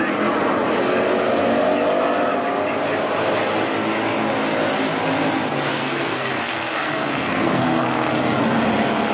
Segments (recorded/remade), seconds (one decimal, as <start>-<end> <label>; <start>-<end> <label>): 0.0-5.7 recorded; 5.7-8.1 remade; 8.1-9.1 recorded